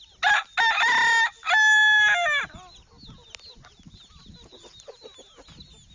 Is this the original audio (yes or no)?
yes